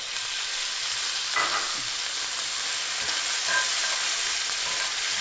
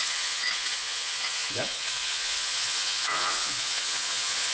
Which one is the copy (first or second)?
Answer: second